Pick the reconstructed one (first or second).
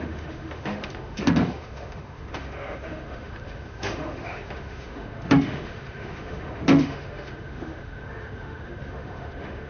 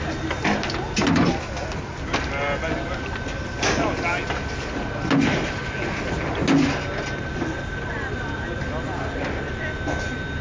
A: first